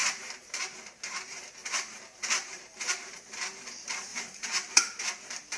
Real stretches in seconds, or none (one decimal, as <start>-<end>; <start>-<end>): 0.6-1.6; 3.2-4.1; 5.0-5.6